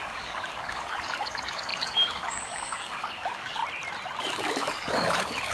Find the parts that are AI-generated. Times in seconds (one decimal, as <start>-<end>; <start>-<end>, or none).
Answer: 0.0-3.6; 4.2-5.5